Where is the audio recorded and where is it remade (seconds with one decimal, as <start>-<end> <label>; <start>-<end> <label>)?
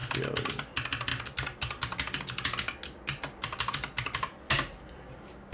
0.0-5.5 recorded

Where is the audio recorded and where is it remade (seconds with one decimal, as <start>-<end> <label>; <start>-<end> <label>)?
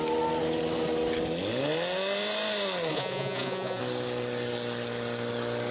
0.0-2.9 recorded; 2.9-3.8 remade; 3.8-5.7 recorded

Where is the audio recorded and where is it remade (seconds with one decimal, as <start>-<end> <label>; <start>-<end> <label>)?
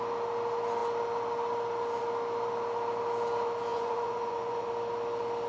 0.0-3.7 recorded; 3.7-4.7 remade; 4.7-5.5 recorded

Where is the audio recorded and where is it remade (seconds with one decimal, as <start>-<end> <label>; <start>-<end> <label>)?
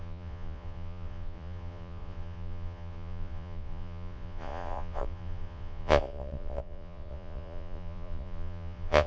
0.0-9.1 remade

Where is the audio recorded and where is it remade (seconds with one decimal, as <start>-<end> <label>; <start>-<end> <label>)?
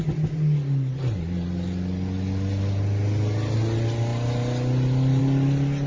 0.0-5.9 recorded